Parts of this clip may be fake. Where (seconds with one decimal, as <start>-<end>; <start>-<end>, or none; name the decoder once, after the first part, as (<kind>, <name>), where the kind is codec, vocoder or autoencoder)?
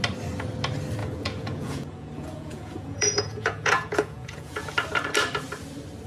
1.0-4.7 (vocoder, Vocos)